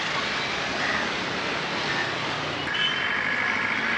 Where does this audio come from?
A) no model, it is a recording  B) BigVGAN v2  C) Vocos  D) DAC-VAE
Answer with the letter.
A